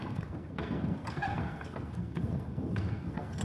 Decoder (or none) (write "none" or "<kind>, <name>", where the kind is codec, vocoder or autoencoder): codec, SNAC